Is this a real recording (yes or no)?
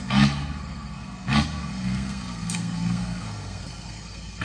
no